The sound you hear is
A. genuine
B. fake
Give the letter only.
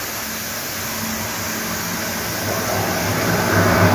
A